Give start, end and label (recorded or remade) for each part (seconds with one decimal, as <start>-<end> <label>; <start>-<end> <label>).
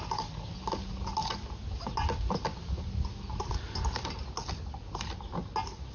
0.0-5.9 recorded